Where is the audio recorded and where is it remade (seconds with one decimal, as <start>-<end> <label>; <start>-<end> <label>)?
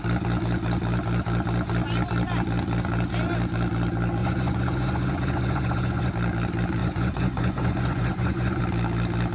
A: 0.0-4.2 recorded; 4.2-6.1 remade; 6.1-6.8 recorded; 6.8-8.6 remade; 8.6-9.3 recorded